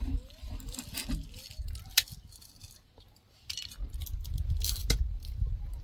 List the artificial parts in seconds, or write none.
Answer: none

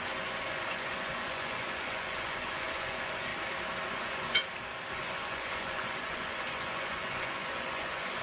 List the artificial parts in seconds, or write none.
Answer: 0.0-3.3 (vocoder, Vocos); 3.9-4.4; 4.9-8.2